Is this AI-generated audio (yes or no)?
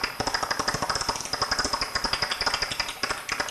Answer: no